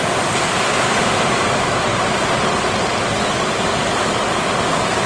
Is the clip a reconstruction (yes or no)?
no